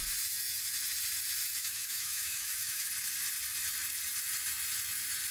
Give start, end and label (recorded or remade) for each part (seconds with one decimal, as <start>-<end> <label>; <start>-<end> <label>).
0.0-1.6 recorded; 1.6-2.9 remade; 2.9-5.3 recorded